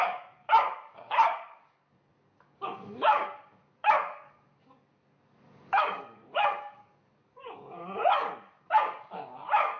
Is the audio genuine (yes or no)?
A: no